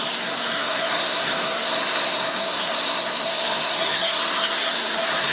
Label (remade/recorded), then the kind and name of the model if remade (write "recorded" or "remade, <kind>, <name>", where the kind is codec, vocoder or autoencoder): remade, codec, SNAC